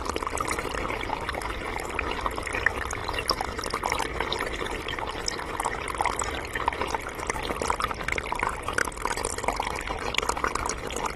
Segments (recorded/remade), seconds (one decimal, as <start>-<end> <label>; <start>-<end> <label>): 0.0-11.2 recorded